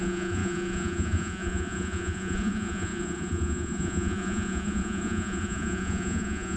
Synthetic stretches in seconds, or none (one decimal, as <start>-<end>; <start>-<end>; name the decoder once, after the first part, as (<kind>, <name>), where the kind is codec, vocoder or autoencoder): 0.0-6.6 (vocoder, Vocos)

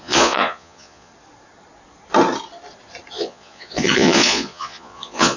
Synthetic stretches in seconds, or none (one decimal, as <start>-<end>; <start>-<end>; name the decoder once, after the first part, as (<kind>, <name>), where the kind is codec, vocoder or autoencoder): 0.0-1.1 (vocoder, Vocos); 3.1-5.4

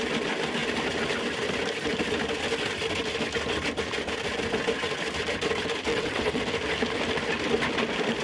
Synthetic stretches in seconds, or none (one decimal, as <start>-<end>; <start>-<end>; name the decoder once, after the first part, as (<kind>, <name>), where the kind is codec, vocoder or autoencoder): 5.9-6.4 (vocoder, WaveNeXt)

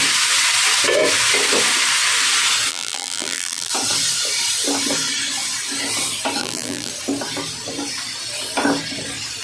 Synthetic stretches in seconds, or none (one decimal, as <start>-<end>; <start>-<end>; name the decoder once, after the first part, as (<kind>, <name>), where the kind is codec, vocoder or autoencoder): 2.7-3.7 (vocoder, BigVGAN v2); 6.4-6.9

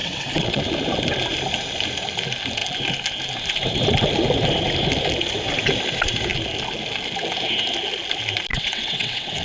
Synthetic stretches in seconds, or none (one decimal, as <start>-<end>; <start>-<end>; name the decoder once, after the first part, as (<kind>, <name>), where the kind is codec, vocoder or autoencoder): 0.0-0.6 (vocoder, WaveNeXt); 8.5-9.4